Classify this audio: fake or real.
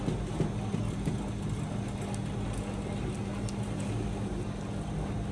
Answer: real